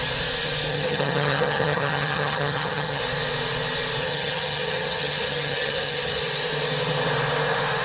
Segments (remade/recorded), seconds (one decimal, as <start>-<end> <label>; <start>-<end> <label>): 0.0-0.7 recorded; 0.7-3.0 remade; 3.0-4.0 recorded; 4.0-6.2 remade; 6.2-7.8 recorded